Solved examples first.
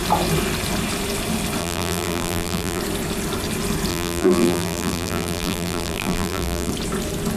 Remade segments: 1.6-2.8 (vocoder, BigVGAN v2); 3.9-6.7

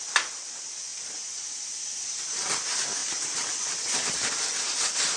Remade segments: 0.9-2.2 (vocoder, BigVGAN v2); 3.0-4.5

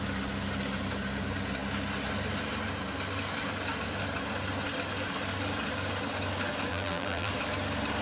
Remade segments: 6.7-7.3 (vocoder, BigVGAN v2)

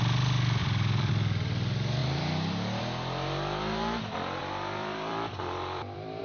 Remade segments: 0.6-1.1 (vocoder, BigVGAN v2); 2.0-2.8; 4.4-6.2

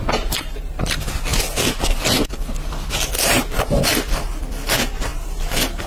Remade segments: 0.0-0.7 (vocoder, BigVGAN v2)

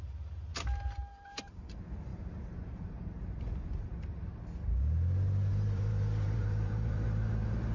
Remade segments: 0.0-0.5 (vocoder, BigVGAN v2); 1.1-4.3; 5.5-7.7

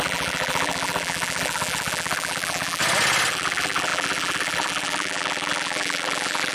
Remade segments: 0.0-2.8 (vocoder, BigVGAN v2); 3.3-6.5